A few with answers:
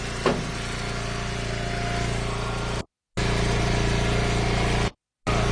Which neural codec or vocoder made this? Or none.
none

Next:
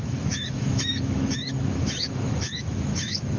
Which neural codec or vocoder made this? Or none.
autoencoder, DAC-VAE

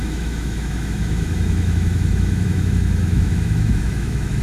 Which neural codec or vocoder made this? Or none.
autoencoder, DAC-VAE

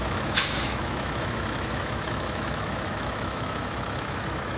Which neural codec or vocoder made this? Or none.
autoencoder, DAC-VAE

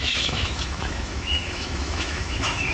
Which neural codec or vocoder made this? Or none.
autoencoder, DAC-VAE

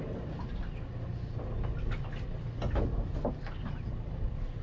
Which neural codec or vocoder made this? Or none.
none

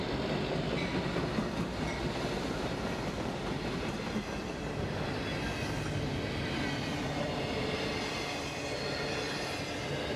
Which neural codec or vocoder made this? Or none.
none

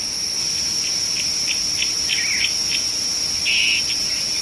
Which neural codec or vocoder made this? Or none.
none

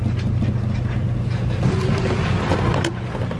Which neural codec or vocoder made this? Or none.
none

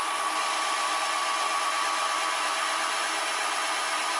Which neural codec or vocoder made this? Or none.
none